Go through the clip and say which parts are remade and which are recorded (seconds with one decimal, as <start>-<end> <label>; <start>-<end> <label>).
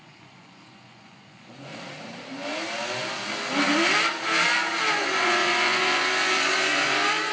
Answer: 0.0-1.7 remade; 1.7-4.9 recorded; 4.9-7.3 remade